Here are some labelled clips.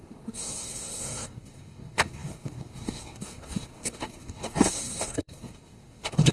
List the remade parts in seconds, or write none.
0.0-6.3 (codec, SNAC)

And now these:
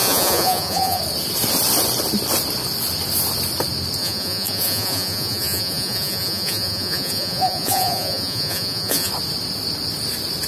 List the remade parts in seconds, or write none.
0.0-1.0 (vocoder, Vocos); 4.0-9.1

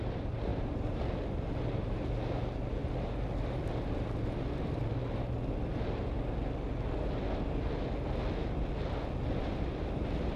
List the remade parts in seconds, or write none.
0.5-1.0 (vocoder, BigVGAN v2); 9.4-10.4

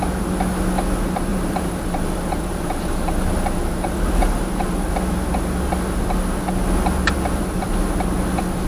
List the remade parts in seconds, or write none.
1.3-4.9 (vocoder, BigVGAN v2)

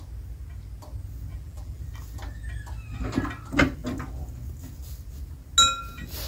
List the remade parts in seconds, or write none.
1.3-1.8 (vocoder, BigVGAN v2)